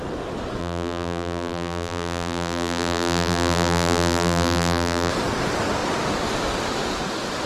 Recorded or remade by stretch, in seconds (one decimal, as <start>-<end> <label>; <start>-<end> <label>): 0.0-0.6 recorded; 0.6-5.1 remade; 5.1-7.5 recorded